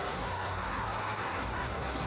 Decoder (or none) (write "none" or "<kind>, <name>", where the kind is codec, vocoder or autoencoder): codec, SNAC